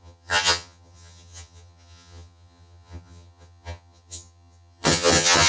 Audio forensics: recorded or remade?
remade